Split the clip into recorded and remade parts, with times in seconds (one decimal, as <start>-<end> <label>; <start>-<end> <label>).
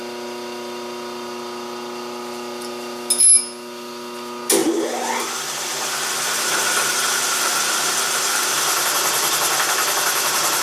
0.0-10.6 recorded